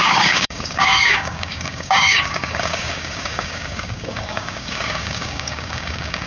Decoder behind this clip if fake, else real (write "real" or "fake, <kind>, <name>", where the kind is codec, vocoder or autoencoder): fake, codec, DAC